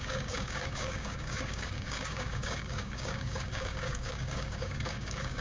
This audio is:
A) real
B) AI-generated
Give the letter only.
B